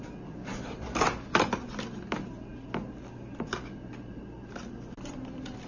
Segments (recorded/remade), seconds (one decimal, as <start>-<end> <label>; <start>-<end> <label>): 0.0-5.7 recorded